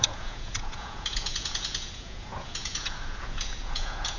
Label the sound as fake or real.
fake